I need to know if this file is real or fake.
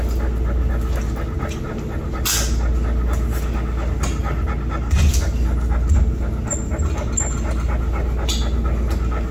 real